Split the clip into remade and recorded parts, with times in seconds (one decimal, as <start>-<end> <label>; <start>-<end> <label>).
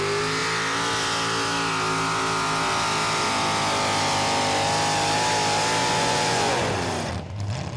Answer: 0.0-5.8 recorded; 5.8-7.1 remade; 7.1-7.8 recorded